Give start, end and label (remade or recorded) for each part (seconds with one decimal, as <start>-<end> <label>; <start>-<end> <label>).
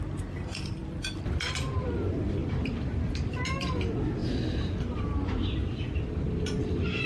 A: 0.0-4.2 remade; 4.2-6.2 recorded; 6.2-7.1 remade